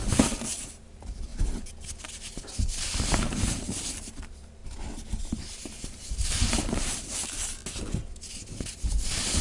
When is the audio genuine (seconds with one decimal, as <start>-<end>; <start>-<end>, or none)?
1.3-2.6; 4.6-5.3; 7.6-9.4